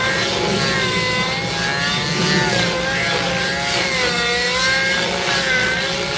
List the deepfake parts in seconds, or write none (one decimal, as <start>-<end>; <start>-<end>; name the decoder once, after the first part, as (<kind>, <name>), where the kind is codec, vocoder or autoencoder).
none